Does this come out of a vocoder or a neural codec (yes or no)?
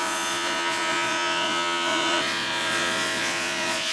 yes